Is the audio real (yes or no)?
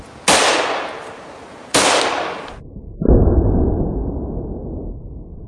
yes